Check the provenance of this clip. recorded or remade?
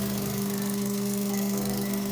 remade